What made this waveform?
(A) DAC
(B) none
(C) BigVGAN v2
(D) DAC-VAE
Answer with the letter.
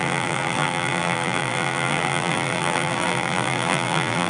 C